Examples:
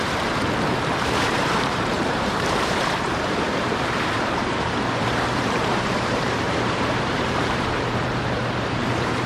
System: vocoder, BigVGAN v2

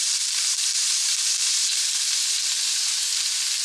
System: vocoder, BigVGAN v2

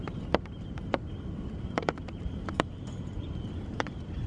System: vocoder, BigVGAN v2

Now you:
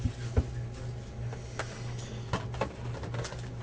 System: none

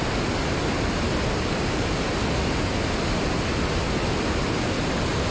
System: none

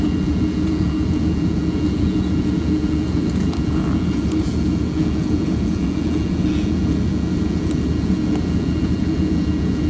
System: vocoder, Vocos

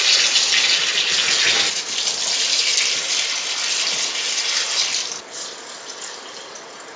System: none